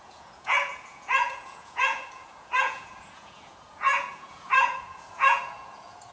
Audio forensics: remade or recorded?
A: remade